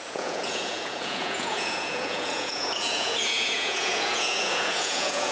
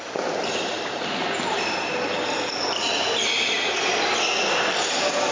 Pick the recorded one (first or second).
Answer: second